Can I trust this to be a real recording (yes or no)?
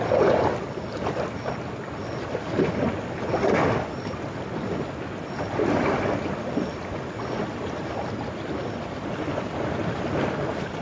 yes